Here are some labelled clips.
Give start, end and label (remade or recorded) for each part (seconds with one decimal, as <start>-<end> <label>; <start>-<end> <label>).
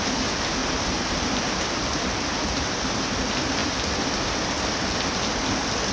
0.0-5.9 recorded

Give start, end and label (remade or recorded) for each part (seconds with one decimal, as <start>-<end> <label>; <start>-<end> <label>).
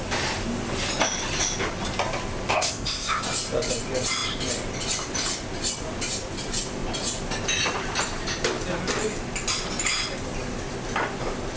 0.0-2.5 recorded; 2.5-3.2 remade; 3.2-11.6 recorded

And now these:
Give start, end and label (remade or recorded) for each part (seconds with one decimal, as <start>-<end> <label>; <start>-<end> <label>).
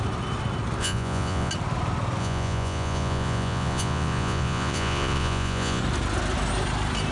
0.0-0.8 recorded; 0.8-1.5 remade; 1.5-2.2 recorded; 2.2-5.8 remade; 5.8-7.1 recorded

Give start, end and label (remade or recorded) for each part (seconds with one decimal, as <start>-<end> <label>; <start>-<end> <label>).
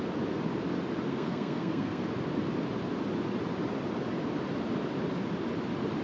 0.0-1.1 recorded; 1.1-2.0 remade; 2.0-6.0 recorded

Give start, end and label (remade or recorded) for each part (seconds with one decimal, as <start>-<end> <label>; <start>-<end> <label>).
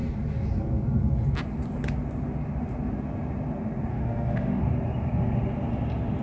0.0-3.9 recorded; 3.9-4.6 remade; 4.6-6.2 recorded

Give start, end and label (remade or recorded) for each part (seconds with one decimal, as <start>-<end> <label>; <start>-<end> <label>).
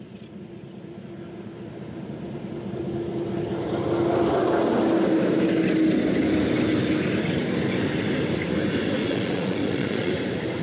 0.0-9.0 recorded; 9.0-10.1 remade; 10.1-10.6 recorded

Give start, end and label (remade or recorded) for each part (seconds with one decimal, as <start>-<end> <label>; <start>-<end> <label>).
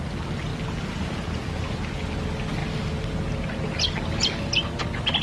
0.0-5.2 recorded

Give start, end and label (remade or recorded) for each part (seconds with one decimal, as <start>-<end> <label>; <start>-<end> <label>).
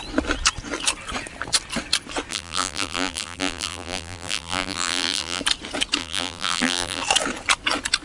0.0-2.3 recorded; 2.3-5.4 remade; 5.4-6.0 recorded; 6.0-7.0 remade; 7.0-8.0 recorded